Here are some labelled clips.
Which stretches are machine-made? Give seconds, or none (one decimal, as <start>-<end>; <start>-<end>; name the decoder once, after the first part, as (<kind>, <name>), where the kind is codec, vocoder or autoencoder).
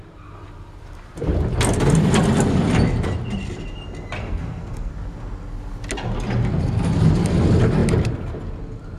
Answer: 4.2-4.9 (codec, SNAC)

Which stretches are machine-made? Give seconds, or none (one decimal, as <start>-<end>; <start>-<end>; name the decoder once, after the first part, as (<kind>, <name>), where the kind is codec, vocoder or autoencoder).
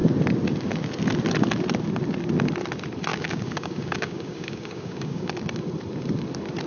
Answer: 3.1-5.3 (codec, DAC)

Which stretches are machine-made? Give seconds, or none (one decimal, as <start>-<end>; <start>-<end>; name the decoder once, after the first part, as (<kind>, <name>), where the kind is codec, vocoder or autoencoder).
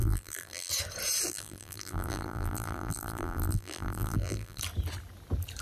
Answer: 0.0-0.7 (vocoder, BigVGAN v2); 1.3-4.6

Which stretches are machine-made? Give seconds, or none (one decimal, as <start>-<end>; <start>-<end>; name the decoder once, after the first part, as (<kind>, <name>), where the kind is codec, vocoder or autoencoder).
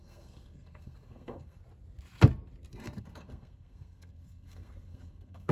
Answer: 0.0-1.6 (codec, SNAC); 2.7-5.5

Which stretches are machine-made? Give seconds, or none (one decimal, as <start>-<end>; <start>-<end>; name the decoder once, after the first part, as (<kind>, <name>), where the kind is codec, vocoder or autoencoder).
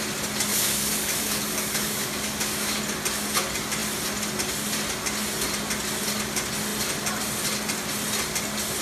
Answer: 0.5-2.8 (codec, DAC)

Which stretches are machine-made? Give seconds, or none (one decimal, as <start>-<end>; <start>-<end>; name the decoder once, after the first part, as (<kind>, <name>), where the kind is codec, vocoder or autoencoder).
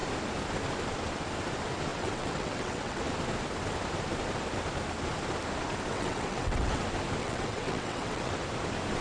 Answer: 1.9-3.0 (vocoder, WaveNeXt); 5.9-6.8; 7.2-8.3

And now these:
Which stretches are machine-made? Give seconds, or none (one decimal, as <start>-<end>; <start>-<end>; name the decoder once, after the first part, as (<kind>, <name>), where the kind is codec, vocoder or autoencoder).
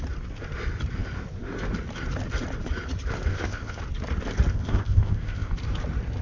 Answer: 3.3-3.8 (codec, ZipCodec); 4.5-5.5